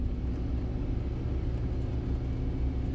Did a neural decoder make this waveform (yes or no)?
no